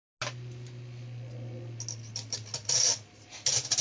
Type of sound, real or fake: real